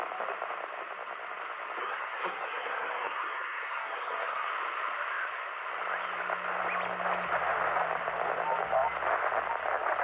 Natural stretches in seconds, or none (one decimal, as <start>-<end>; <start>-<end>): 0.0-1.8; 4.5-10.0